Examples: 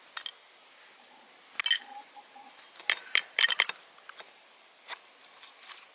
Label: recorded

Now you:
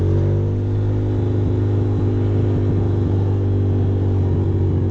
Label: recorded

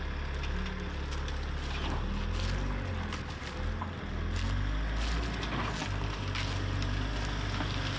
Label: recorded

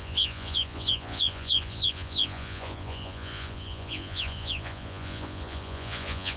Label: remade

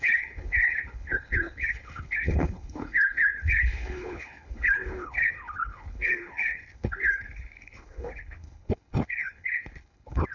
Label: remade